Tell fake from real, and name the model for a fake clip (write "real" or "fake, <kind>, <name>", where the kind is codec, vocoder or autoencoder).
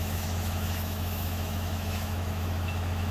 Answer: fake, autoencoder, DAC-VAE